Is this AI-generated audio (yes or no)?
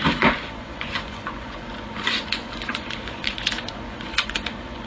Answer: yes